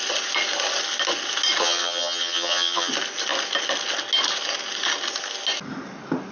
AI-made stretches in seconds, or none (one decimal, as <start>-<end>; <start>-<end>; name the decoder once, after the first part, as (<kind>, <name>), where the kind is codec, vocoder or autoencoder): 1.6-2.9 (vocoder, HiFi-GAN)